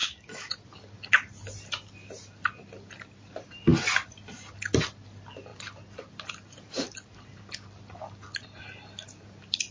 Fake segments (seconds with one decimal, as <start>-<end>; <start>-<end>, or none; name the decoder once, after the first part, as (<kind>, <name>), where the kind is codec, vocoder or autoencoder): 0.0-0.5 (autoencoder, DAC-VAE)